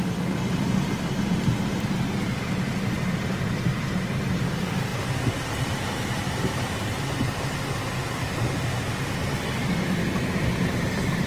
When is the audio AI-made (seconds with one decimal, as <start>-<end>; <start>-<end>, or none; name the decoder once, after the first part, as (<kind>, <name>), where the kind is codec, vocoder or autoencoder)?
none